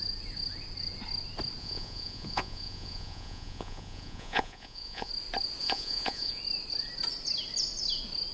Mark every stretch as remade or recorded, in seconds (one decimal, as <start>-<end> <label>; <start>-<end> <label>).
0.0-1.6 recorded; 1.6-5.1 remade; 5.1-5.6 recorded; 5.6-6.4 remade; 6.4-8.3 recorded